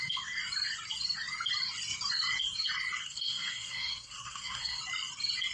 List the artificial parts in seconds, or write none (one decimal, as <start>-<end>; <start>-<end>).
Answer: 3.0-4.8